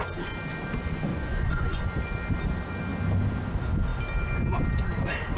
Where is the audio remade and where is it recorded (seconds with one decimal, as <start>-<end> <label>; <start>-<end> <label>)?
0.0-1.1 recorded; 1.1-1.8 remade; 1.8-5.4 recorded